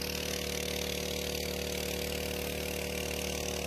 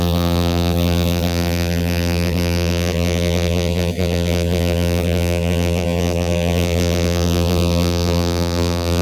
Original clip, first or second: first